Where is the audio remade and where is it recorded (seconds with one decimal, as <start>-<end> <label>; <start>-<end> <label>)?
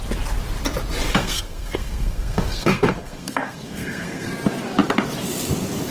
0.0-1.2 recorded; 1.2-4.3 remade; 4.3-5.9 recorded